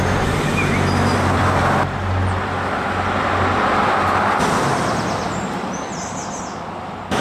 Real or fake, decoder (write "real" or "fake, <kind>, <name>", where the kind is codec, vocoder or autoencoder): real